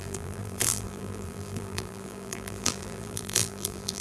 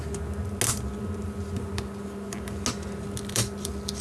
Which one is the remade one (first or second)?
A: first